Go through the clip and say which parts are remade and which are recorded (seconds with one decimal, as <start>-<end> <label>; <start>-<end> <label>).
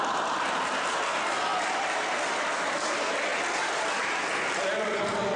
0.0-5.4 remade